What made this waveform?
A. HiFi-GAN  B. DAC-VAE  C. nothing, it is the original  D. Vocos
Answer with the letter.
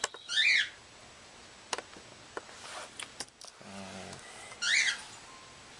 C